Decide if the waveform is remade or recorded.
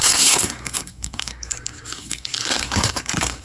remade